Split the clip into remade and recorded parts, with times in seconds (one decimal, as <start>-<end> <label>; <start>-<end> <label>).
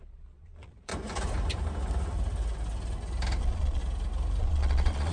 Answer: 0.0-0.9 remade; 0.9-3.4 recorded; 3.4-3.8 remade; 3.8-4.4 recorded; 4.4-5.1 remade